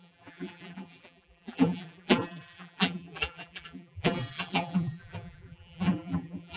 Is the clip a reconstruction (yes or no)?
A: yes